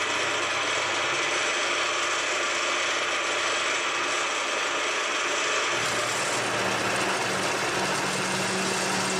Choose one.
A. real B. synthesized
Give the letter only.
A